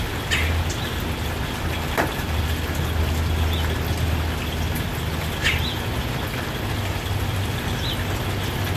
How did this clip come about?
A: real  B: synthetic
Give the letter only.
A